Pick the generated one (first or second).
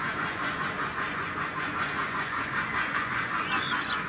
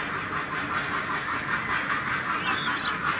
first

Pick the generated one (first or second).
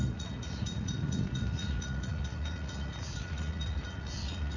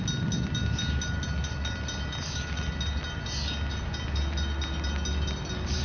first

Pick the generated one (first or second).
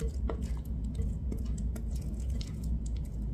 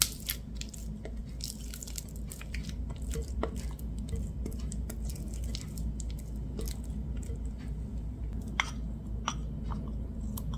first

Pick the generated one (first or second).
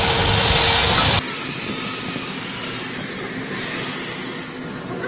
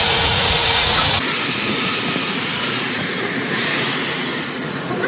second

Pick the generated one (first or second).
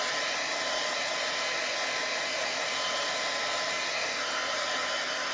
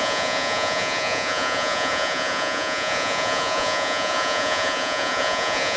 second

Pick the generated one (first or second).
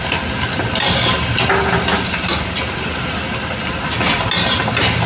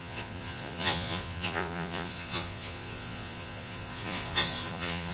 second